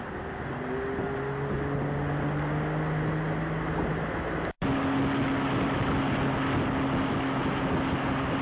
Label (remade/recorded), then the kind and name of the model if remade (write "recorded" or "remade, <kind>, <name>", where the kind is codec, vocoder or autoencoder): recorded